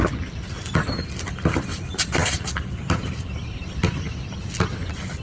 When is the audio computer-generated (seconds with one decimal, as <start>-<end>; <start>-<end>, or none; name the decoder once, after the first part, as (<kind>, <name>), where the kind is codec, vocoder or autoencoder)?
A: 1.7-4.2 (vocoder, BigVGAN v2)